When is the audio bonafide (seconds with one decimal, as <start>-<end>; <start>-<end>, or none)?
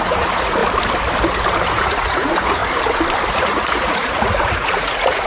0.6-1.7; 2.6-3.3